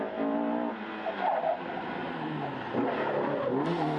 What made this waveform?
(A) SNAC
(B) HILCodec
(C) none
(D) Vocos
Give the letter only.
C